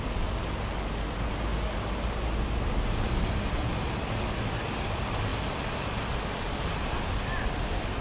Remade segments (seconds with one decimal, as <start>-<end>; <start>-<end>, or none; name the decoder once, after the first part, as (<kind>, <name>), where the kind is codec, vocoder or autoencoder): none